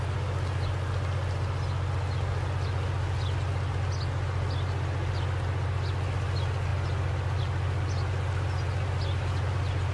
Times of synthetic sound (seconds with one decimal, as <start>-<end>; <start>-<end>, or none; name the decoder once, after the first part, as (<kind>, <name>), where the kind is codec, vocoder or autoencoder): none

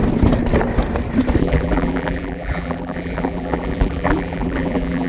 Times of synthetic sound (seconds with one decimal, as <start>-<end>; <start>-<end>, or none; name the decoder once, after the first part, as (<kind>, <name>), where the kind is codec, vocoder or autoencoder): 1.4-5.1 (vocoder, BigVGAN v2)

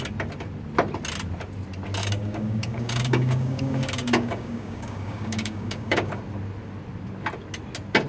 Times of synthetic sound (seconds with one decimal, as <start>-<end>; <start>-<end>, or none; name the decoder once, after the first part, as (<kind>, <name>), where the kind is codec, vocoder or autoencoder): 2.0-6.2 (codec, DAC)

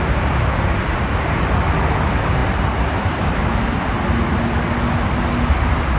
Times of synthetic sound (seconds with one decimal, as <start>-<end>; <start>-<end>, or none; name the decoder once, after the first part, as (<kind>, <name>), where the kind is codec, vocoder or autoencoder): none

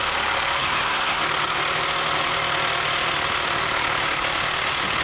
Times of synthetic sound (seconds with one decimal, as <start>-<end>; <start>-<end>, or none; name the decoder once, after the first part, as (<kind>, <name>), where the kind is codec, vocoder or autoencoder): 0.6-1.2 (codec, SNAC)

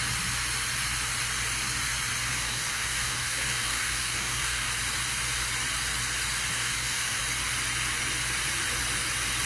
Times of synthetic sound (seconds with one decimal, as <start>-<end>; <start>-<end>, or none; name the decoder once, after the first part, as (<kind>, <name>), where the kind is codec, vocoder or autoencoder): 2.2-4.7 (codec, DAC); 6.5-7.2